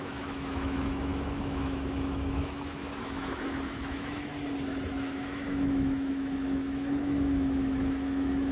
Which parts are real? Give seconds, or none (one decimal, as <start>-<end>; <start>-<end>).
4.3-4.9